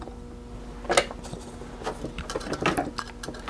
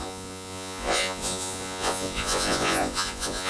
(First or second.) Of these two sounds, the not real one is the second